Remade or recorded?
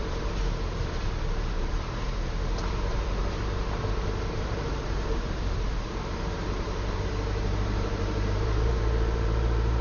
remade